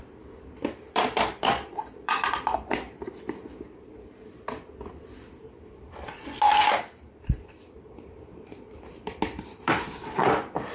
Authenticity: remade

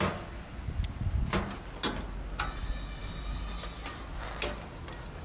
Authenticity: recorded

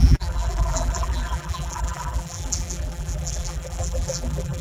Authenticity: remade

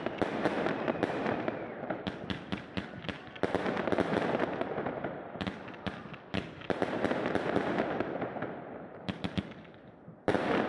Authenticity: remade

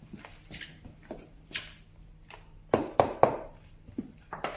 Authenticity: remade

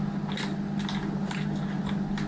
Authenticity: recorded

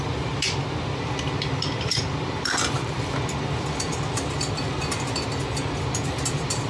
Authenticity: remade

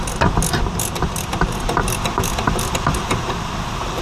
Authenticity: remade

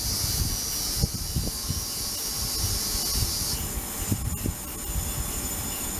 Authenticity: recorded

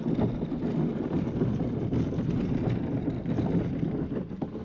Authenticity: recorded